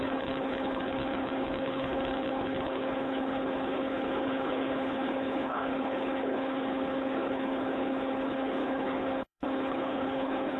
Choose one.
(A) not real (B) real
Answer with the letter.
A